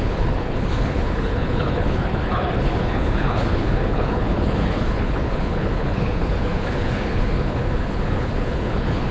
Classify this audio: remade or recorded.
remade